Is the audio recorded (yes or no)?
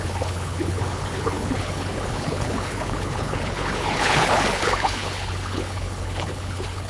no